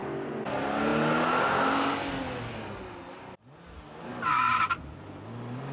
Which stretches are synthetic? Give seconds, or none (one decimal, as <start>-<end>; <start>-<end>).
none

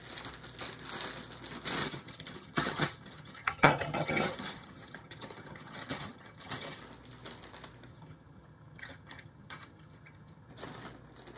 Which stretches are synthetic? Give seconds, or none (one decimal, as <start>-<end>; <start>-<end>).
1.8-6.8; 7.9-10.5

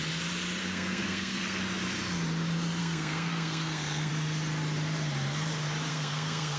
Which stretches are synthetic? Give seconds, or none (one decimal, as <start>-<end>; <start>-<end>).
0.6-1.6; 2.8-4.1; 5.9-6.6

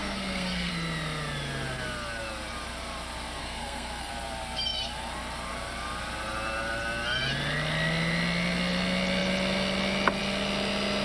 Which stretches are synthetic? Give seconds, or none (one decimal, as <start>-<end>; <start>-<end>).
0.0-0.7; 3.4-4.1

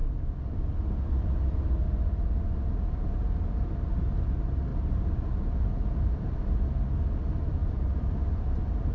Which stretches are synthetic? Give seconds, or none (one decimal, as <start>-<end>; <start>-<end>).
4.7-6.3; 7.6-8.2

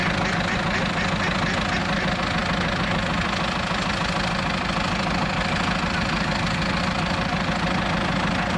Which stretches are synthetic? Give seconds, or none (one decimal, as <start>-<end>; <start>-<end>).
none